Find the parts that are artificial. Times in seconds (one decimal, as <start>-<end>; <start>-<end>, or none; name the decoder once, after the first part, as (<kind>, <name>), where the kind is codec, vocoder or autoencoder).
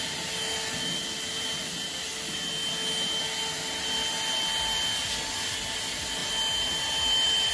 none